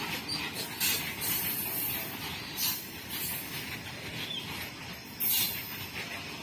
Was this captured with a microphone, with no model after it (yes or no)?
yes